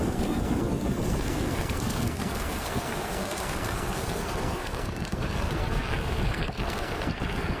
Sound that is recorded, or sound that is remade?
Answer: remade